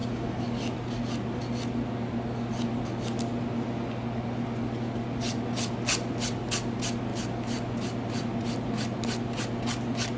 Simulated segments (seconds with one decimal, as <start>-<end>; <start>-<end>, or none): none

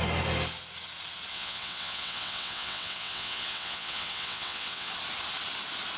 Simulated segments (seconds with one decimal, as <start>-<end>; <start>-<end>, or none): 1.3-4.9

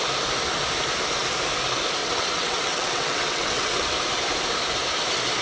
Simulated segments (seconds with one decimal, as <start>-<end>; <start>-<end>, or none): 2.0-3.8

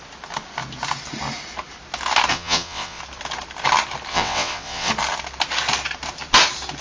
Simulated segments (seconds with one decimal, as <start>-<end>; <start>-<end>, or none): 2.3-3.0; 4.1-4.9

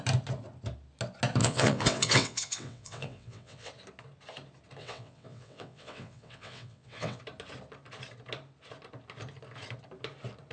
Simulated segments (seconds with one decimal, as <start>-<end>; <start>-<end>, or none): 1.4-3.7; 4.8-7.2

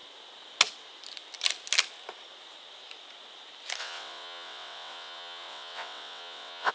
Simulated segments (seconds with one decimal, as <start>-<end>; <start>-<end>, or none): 3.8-6.7

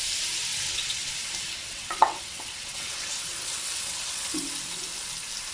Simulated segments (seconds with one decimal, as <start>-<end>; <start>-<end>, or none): 0.5-1.1; 1.6-4.4

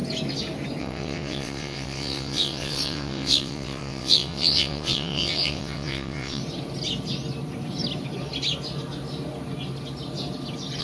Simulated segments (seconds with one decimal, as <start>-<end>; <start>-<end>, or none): 0.8-6.4